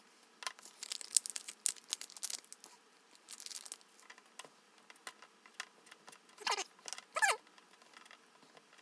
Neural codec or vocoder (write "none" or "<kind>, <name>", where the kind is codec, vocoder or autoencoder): none